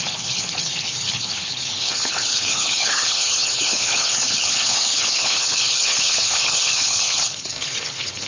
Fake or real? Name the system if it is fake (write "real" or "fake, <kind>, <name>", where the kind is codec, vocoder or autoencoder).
fake, codec, HILCodec